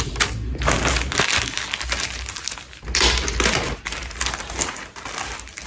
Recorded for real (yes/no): yes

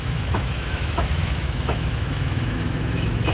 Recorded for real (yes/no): no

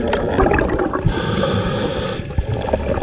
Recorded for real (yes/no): yes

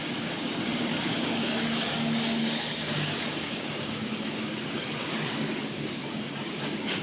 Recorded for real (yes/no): no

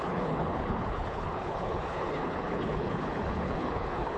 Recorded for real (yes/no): no